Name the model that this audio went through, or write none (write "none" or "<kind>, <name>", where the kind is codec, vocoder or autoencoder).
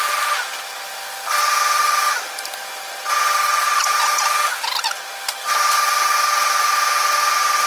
none